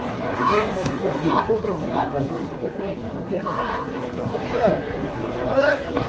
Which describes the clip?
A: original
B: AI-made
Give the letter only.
B